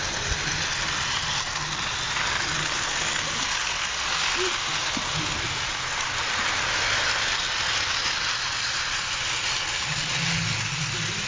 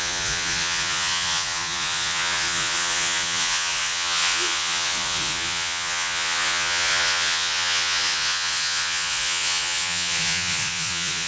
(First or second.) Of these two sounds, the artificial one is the second